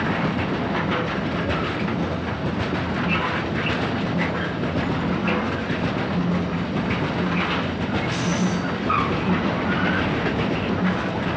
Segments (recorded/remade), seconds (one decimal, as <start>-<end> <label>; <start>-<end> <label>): 0.0-11.4 recorded